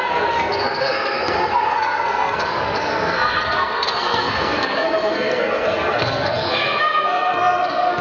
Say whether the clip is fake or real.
fake